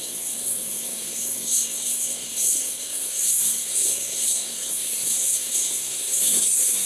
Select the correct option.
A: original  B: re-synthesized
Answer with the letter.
B